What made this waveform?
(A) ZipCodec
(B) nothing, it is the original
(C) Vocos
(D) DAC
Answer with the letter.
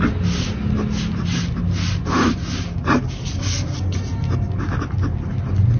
B